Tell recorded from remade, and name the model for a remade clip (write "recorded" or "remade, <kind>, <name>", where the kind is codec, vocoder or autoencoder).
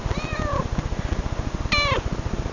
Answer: recorded